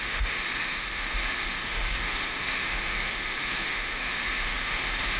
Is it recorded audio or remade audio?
remade